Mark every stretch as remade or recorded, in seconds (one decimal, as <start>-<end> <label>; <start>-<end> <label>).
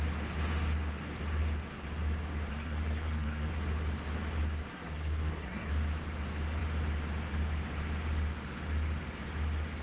0.0-2.5 recorded; 2.5-3.5 remade; 3.5-4.7 recorded; 4.7-5.7 remade; 5.7-9.8 recorded